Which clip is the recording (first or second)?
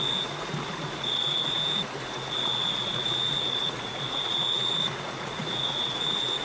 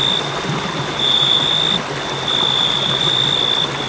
second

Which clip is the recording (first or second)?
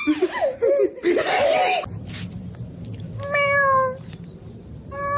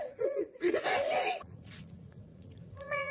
first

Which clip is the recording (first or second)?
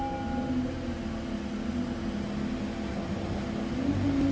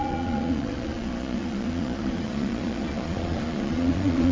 first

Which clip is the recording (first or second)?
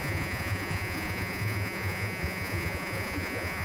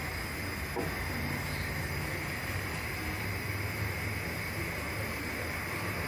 second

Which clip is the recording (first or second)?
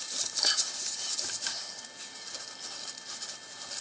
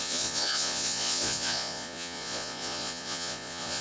first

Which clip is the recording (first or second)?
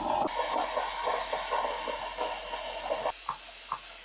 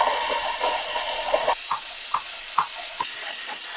first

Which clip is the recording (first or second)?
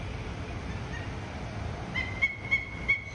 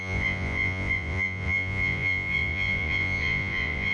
first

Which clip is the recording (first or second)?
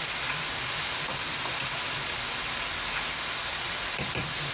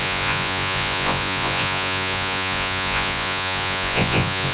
first